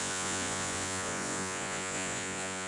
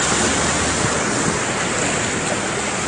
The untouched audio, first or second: second